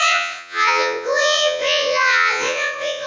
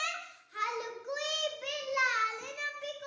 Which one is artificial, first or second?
first